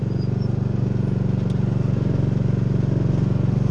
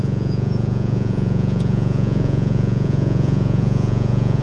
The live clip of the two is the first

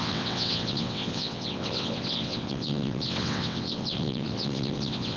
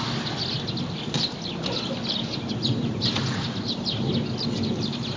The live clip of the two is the second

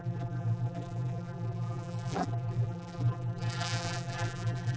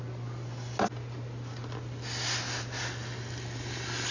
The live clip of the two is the second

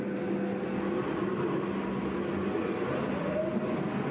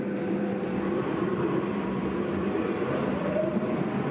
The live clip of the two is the first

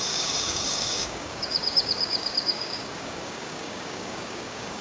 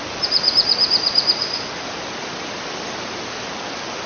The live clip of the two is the second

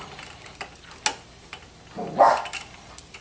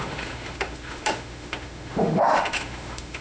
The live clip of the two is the first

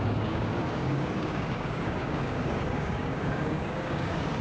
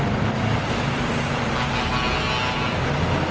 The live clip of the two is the second